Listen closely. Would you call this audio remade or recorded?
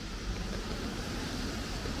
recorded